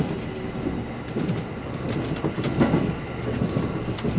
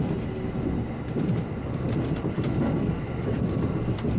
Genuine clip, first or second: first